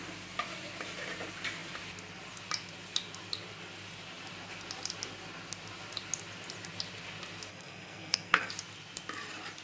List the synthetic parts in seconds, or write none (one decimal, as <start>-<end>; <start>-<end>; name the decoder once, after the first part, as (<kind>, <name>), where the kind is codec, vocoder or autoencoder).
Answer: 7.5-8.5 (codec, SNAC)